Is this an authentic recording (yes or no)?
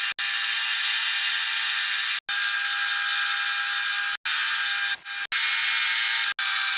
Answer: yes